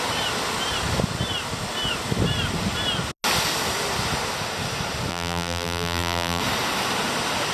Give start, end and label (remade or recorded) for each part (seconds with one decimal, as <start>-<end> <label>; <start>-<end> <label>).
0.0-5.1 recorded; 5.1-6.4 remade; 6.4-7.5 recorded